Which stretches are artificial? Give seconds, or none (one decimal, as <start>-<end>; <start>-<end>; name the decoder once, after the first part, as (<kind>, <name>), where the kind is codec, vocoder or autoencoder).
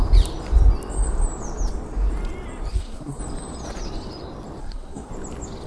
2.7-3.2 (codec, SNAC); 4.6-5.1